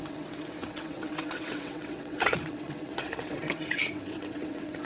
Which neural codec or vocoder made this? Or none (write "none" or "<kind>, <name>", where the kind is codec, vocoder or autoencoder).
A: vocoder, WaveNeXt